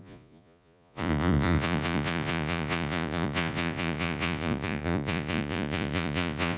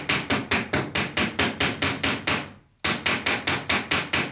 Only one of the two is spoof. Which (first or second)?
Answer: first